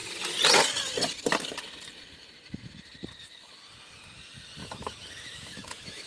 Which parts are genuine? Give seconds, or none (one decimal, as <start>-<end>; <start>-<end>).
0.0-4.6

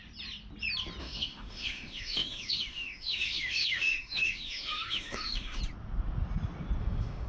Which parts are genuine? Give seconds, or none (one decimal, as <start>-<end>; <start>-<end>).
0.0-1.0; 5.6-6.8

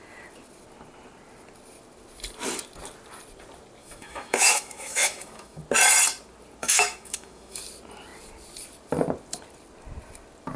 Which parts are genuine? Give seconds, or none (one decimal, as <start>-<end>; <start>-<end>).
0.0-3.8; 5.6-6.6; 7.6-10.6

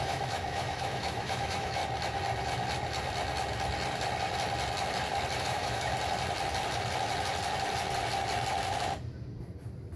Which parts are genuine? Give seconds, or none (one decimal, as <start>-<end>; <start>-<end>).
1.8-5.4; 5.9-10.0

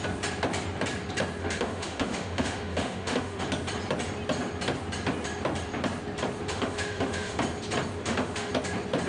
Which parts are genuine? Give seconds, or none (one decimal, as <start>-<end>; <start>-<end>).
0.0-1.4; 3.4-6.5; 7.4-8.0; 8.5-9.1

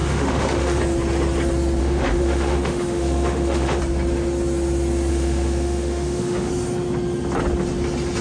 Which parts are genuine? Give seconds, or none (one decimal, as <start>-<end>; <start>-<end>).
0.8-1.8; 3.8-5.1; 6.5-8.2